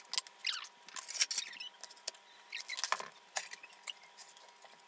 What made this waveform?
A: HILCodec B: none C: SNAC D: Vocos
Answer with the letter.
B